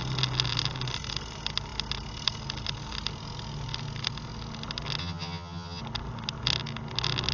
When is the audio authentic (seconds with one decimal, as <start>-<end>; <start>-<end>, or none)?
0.0-5.0; 5.8-7.3